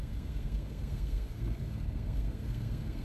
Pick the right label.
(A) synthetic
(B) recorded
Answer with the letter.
A